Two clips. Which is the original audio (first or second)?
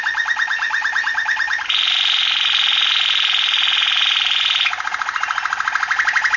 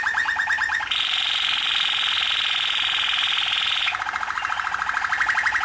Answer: first